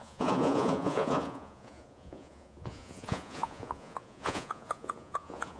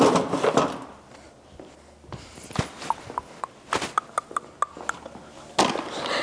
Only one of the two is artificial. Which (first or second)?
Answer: first